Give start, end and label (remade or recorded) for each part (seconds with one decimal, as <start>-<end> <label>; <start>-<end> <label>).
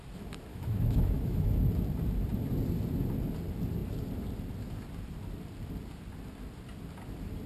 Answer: 0.0-0.5 recorded; 0.5-1.5 remade; 1.5-7.5 recorded